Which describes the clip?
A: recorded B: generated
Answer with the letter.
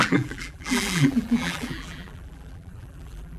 B